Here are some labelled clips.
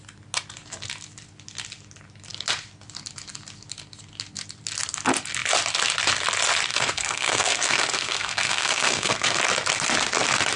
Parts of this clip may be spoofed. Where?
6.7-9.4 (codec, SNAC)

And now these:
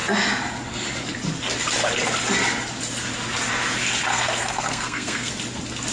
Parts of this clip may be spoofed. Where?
4.1-5.3 (codec, SNAC)

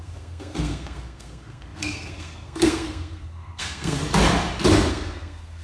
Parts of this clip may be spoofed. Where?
0.0-4.0 (codec, SNAC); 4.9-5.6

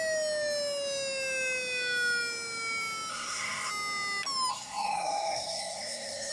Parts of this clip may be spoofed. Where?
3.1-3.7 (codec, SNAC); 4.5-6.3